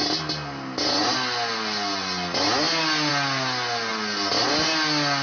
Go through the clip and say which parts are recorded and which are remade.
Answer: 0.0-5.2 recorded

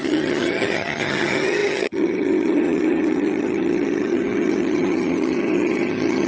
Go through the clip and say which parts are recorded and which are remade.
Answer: 0.0-6.3 remade